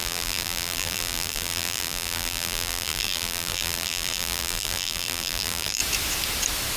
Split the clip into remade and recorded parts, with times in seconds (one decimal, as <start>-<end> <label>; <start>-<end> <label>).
0.0-5.8 remade; 5.8-6.8 recorded